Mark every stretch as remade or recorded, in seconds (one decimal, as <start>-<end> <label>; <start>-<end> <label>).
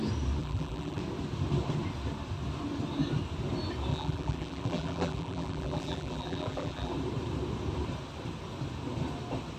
0.0-0.4 recorded; 0.4-1.0 remade; 1.0-3.9 recorded; 3.9-6.9 remade; 6.9-9.6 recorded